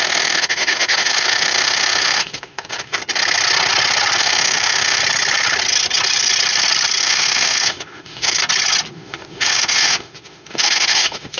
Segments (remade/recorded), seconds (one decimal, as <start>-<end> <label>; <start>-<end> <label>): 0.0-3.0 remade; 3.0-4.2 recorded; 4.2-5.0 remade; 5.0-7.0 recorded; 7.0-8.4 remade; 8.4-8.9 recorded; 8.9-11.4 remade